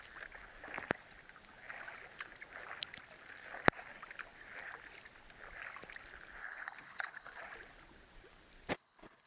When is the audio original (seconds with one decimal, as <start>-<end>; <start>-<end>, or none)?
0.0-6.4; 7.4-8.7